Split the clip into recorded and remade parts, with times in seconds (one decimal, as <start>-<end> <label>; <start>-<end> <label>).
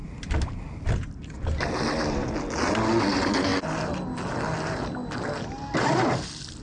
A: 0.0-6.6 recorded